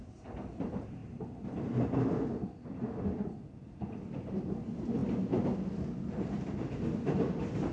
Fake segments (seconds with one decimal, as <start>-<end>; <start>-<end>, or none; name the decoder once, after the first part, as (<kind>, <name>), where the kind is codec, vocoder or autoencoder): none